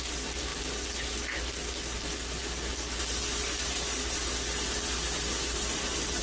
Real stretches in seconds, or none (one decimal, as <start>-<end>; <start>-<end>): 0.0-6.2